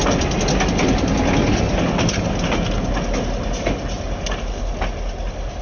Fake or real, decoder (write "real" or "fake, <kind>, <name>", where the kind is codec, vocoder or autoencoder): real